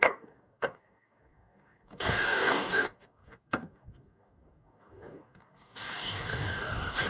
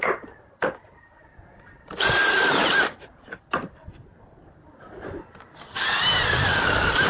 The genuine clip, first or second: second